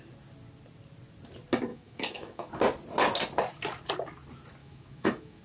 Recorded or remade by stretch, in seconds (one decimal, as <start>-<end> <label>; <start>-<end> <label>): 0.0-1.7 recorded; 1.7-2.5 remade; 2.5-4.6 recorded; 4.6-5.4 remade